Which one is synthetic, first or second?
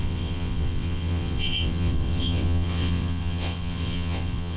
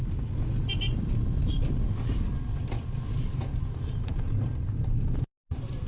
first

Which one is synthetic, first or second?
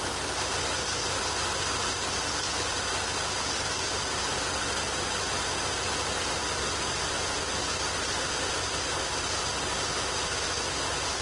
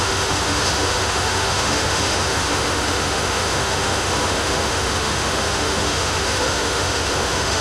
second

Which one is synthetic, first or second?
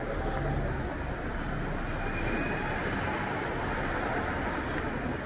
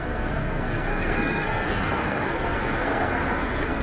second